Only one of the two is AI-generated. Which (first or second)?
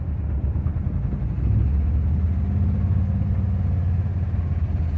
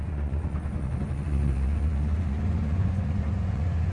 second